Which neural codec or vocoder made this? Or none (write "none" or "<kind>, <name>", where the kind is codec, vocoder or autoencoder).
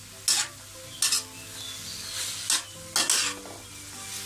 none